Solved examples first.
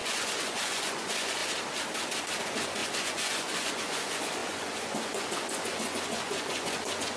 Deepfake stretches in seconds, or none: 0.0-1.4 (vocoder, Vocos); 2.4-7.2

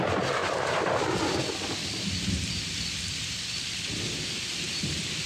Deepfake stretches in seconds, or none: none